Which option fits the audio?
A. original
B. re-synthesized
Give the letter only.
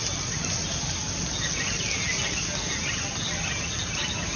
A